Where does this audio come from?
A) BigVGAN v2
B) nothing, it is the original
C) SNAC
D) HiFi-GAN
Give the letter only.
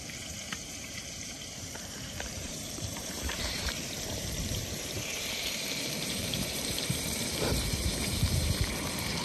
A